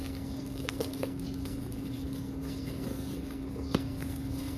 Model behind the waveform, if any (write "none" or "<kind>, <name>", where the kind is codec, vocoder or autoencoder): codec, SNAC